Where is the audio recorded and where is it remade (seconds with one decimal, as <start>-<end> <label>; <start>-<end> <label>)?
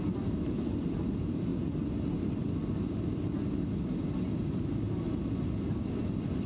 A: 0.0-6.5 recorded